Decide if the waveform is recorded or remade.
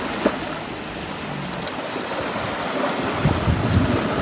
recorded